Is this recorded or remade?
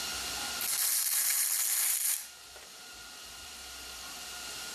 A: remade